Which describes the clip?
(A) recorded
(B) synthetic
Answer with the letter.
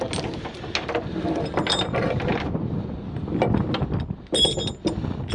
A